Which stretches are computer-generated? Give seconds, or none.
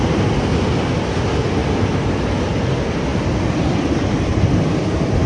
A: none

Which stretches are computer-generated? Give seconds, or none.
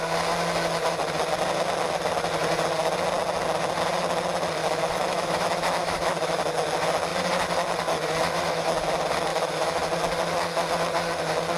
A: 4.6-6.4 (autoencoder, DAC-VAE); 9.3-9.8